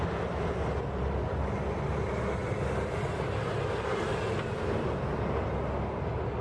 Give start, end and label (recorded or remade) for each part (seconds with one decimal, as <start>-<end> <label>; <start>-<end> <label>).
0.0-6.4 recorded